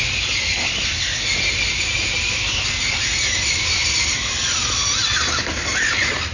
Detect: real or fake real